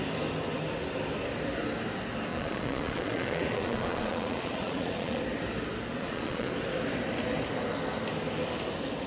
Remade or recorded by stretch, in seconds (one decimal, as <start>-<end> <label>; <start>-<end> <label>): 0.0-2.3 recorded; 2.3-5.2 remade; 5.2-6.0 recorded; 6.0-6.5 remade; 6.5-9.1 recorded